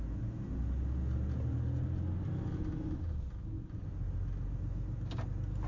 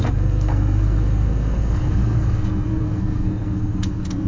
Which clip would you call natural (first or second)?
first